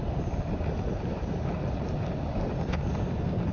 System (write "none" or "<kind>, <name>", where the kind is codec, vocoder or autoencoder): none